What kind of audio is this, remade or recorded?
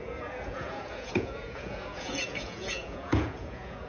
remade